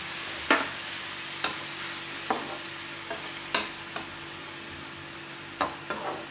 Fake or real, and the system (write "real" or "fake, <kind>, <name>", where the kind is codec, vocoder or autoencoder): real